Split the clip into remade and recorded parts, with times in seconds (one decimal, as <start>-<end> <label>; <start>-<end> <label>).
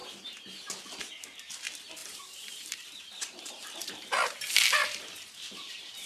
0.0-0.7 remade; 0.7-2.0 recorded; 2.0-6.1 remade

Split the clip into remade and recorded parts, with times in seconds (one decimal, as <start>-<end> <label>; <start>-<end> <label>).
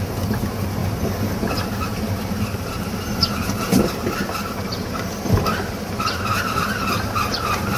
0.0-7.8 recorded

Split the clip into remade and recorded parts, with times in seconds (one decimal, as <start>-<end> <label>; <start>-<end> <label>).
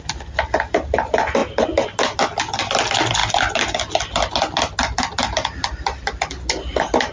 0.0-7.1 recorded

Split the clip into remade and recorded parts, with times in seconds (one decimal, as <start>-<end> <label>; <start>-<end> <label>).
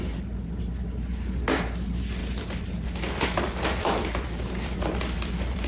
0.0-2.2 recorded; 2.2-5.7 remade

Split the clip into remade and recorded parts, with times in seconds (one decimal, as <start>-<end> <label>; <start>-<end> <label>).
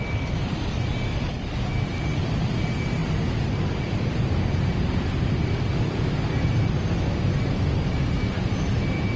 0.0-9.2 recorded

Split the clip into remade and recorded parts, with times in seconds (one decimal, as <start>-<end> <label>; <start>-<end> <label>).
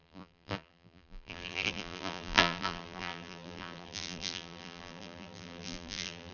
0.0-6.3 remade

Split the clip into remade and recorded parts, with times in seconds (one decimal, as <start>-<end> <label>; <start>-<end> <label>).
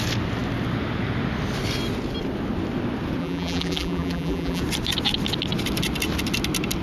0.0-3.2 recorded; 3.2-4.6 remade; 4.6-6.8 recorded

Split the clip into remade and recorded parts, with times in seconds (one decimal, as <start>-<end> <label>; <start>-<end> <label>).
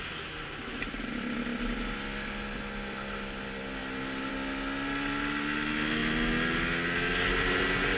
0.0-0.6 recorded; 0.6-1.4 remade; 1.4-8.0 recorded